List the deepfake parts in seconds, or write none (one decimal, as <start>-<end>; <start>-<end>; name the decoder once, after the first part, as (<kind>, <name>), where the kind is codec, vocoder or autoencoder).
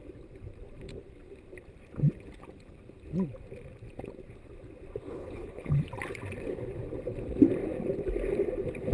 5.1-5.9 (codec, HILCodec)